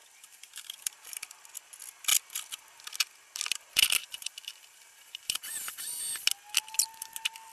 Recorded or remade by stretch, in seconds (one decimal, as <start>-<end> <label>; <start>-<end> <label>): 0.0-1.2 remade; 1.2-4.0 recorded; 4.0-6.0 remade; 6.0-7.5 recorded